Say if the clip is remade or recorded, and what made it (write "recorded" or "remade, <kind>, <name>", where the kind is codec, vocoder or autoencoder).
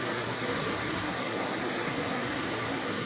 remade, codec, SNAC